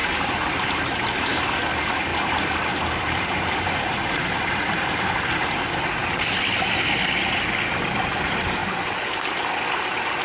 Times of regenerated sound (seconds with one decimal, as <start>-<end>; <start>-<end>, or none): 0.0-1.5; 2.1-5.6; 8.6-9.3